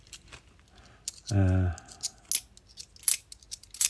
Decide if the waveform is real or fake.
real